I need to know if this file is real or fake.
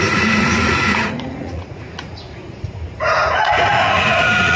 fake